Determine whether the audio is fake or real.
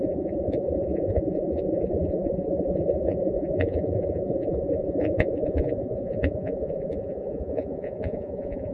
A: fake